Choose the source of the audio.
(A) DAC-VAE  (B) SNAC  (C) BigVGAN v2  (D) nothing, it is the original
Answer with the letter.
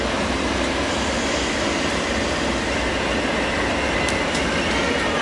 D